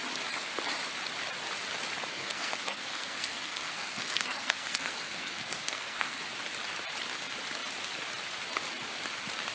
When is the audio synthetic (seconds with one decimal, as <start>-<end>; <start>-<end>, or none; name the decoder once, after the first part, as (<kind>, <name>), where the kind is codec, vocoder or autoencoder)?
2.1-6.2 (codec, SNAC)